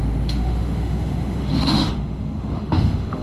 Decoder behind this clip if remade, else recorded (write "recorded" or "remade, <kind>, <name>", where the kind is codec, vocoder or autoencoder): remade, autoencoder, DAC-VAE